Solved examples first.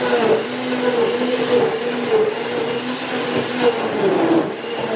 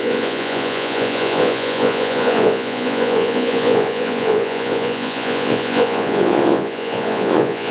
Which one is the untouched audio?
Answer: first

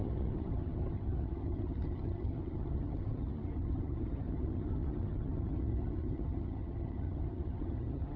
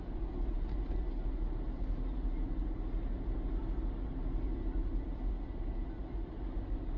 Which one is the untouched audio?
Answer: second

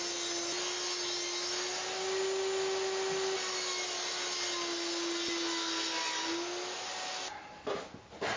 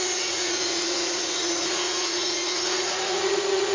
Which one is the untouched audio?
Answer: first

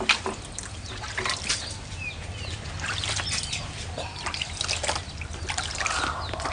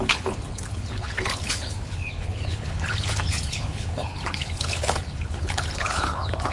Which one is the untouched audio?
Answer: first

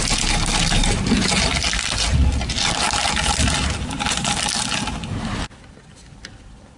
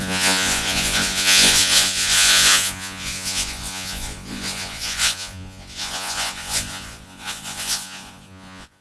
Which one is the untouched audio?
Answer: first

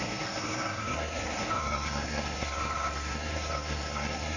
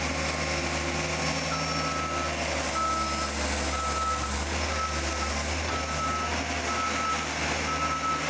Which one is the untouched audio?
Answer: second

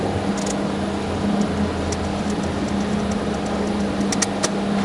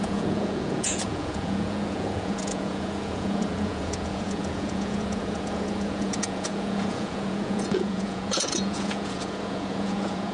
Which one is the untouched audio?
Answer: first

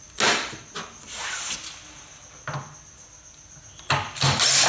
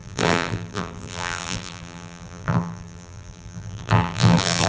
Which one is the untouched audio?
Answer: first